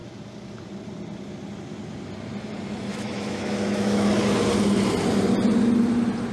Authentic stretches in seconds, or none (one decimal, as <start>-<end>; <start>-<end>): 0.0-2.9; 4.1-6.3